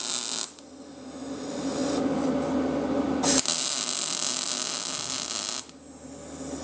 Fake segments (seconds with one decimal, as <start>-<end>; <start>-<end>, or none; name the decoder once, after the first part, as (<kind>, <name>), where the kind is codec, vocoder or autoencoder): none